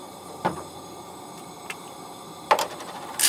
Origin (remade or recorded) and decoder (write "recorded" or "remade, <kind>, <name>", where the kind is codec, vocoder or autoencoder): remade, vocoder, BigVGAN v2